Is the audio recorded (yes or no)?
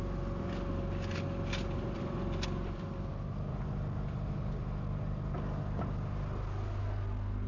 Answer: yes